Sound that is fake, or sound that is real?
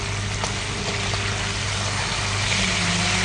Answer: real